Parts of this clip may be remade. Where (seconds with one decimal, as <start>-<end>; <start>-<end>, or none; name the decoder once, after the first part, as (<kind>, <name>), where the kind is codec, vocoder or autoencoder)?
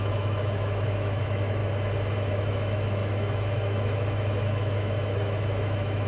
0.0-1.6 (autoencoder, DAC-VAE); 2.3-6.1